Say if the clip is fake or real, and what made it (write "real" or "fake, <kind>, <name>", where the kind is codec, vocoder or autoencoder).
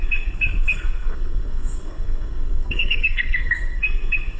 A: fake, codec, SNAC